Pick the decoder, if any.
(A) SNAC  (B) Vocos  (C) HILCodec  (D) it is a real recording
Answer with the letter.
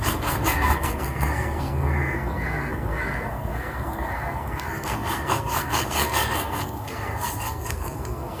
A